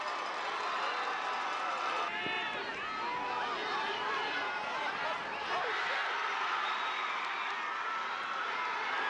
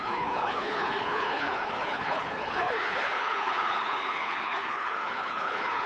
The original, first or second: first